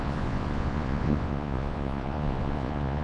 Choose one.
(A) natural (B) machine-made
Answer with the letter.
B